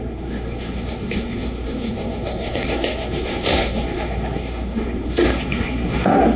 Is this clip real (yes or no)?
no